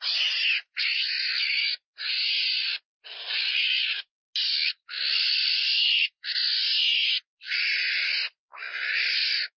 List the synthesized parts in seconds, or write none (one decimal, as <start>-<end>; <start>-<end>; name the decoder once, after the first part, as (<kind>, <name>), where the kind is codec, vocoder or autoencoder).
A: 4.6-6.4 (vocoder, BigVGAN v2)